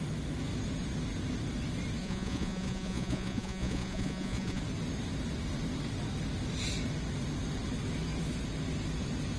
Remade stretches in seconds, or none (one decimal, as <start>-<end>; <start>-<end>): 2.0-4.6